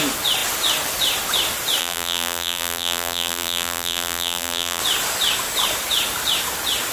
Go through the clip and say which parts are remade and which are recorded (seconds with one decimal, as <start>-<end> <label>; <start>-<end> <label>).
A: 0.0-1.8 recorded; 1.8-4.8 remade; 4.8-6.9 recorded